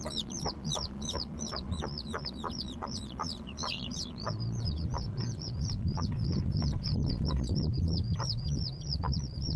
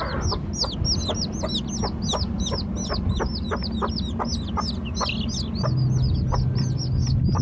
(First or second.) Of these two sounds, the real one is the second